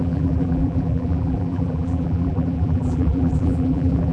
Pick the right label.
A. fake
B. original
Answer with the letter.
A